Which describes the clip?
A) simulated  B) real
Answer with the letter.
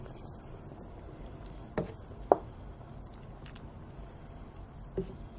B